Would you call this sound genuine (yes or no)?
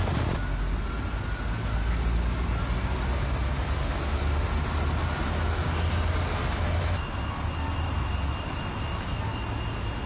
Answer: yes